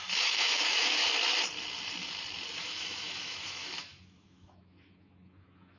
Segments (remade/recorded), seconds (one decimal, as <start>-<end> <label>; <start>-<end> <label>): 0.0-1.0 remade; 1.0-2.6 recorded; 2.6-5.8 remade